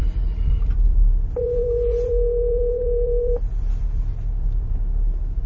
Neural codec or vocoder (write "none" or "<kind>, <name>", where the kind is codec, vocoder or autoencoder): vocoder, BigVGAN v2